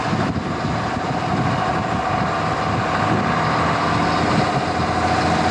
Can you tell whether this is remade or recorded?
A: recorded